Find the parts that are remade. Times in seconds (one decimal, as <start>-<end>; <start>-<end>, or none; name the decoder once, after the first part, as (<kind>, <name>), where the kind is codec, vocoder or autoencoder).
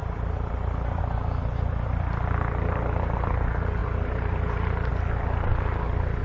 0.0-1.0 (vocoder, BigVGAN v2); 3.8-4.9